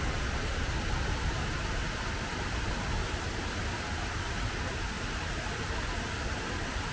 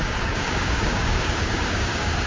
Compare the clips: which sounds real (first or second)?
first